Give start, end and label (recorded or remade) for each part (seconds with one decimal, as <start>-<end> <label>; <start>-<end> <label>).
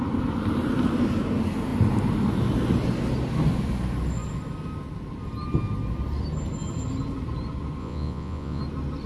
0.0-7.8 recorded; 7.8-8.6 remade; 8.6-9.1 recorded